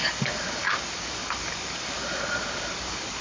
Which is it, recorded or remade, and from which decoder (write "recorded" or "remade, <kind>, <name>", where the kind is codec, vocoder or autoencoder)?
remade, codec, DAC